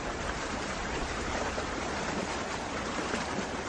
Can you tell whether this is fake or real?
fake